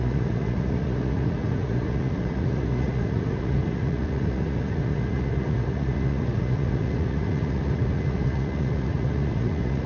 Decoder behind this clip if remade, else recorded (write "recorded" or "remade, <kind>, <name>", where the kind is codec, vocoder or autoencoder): remade, vocoder, Vocos